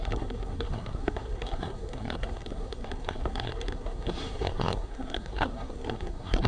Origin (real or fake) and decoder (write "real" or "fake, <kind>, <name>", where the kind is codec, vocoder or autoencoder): fake, codec, SNAC